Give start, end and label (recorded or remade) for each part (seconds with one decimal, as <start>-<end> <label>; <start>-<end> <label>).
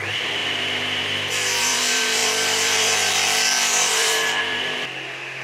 0.0-5.4 remade